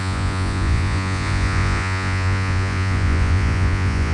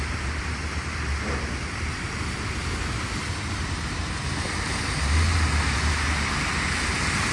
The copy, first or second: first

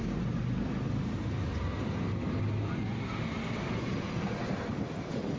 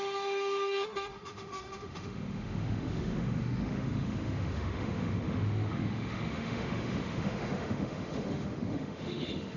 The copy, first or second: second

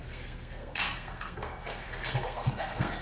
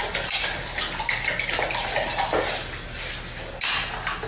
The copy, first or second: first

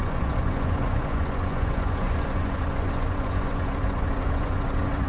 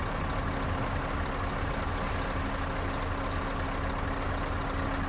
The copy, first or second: first